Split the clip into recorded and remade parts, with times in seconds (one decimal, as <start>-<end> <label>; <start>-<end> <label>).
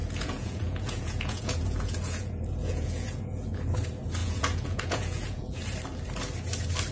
0.0-3.6 remade; 3.6-4.2 recorded; 4.2-5.6 remade; 5.6-6.9 recorded